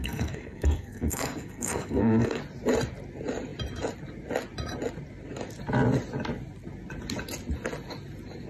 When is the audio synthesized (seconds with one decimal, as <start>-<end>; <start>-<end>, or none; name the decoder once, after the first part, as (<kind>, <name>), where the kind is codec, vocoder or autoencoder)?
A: 0.0-2.4 (codec, SNAC)